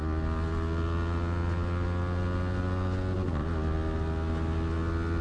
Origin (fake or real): real